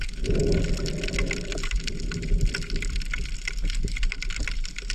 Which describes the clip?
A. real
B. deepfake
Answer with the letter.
A